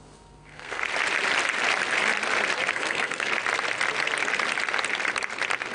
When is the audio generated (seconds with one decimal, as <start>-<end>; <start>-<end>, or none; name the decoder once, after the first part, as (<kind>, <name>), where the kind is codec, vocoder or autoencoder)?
0.0-0.8 (codec, SNAC); 2.7-3.3